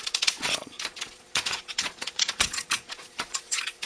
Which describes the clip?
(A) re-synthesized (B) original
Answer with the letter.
A